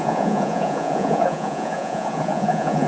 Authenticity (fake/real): fake